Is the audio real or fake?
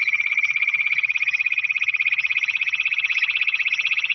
fake